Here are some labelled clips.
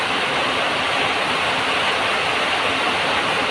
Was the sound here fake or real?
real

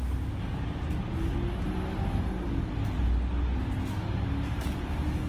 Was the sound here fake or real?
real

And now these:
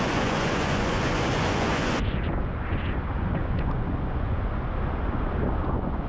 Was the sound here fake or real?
fake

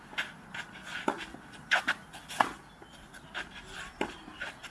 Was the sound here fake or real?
real